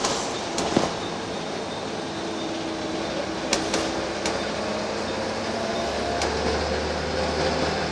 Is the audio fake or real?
real